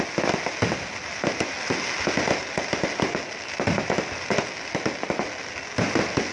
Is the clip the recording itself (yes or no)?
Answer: yes